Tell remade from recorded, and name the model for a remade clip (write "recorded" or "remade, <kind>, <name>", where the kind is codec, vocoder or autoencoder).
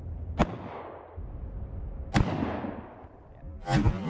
recorded